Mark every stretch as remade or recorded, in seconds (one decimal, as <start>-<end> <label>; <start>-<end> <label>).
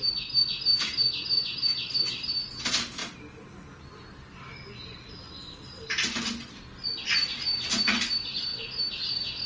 0.0-3.0 recorded; 3.0-4.0 remade; 4.0-9.5 recorded